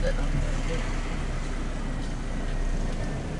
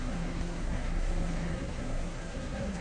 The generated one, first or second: second